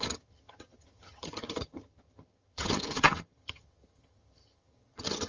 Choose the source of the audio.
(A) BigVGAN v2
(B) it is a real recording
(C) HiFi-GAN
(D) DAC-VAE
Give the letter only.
C